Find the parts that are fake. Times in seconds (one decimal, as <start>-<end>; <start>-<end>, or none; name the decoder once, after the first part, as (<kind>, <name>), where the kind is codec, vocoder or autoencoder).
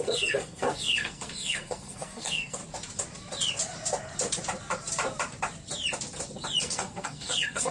0.0-2.6 (codec, SNAC); 6.6-7.7